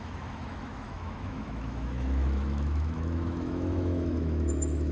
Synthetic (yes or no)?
yes